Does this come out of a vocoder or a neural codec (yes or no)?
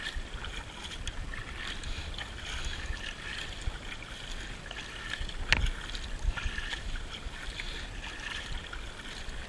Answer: no